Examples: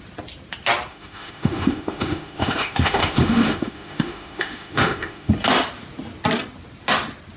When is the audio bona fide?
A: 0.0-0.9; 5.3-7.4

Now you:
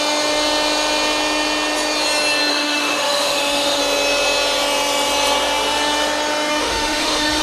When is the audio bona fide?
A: 0.0-2.5; 3.8-6.5

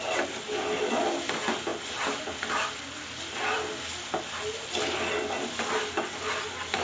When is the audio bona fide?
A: 0.0-6.8

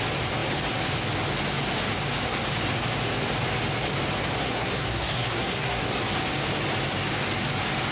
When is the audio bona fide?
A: 0.0-4.4; 5.8-7.9

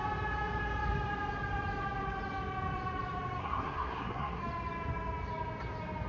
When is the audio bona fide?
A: 0.0-3.4; 4.4-6.1

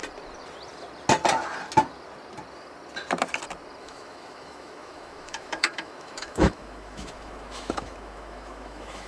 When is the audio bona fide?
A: 0.0-3.8

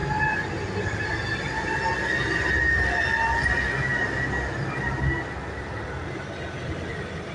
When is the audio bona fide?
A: 0.0-7.3

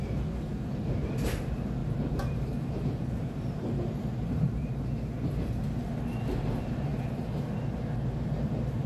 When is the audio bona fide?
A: 0.0-1.8; 4.9-8.9